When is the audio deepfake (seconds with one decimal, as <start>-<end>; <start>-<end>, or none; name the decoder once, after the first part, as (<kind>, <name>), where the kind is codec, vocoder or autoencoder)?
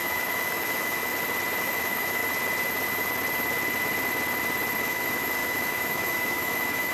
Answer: 0.0-1.1 (autoencoder, DAC-VAE); 1.6-2.2; 4.8-6.9